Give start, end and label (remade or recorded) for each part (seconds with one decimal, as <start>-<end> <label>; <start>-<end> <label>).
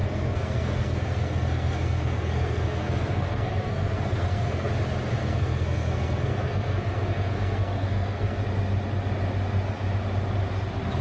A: 0.0-4.7 remade; 4.7-5.2 recorded; 5.2-8.4 remade; 8.4-11.0 recorded